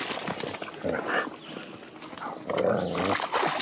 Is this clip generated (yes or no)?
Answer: no